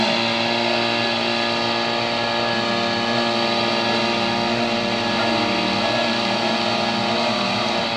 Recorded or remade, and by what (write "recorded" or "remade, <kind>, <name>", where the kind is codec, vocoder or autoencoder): recorded